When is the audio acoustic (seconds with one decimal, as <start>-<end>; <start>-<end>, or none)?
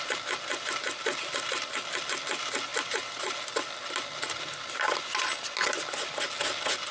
0.0-6.9